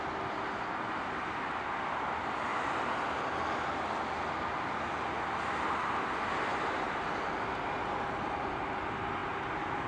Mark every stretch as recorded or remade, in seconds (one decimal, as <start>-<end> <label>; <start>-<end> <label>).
0.0-9.9 recorded